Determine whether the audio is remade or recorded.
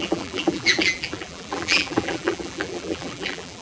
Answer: remade